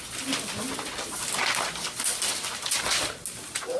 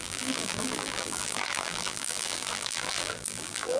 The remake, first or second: second